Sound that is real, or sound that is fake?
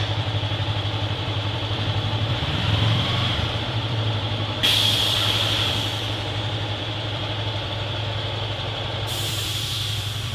fake